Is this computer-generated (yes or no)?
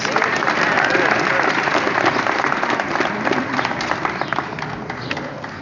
no